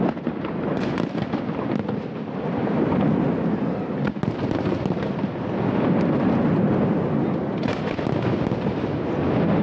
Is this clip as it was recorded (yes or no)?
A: yes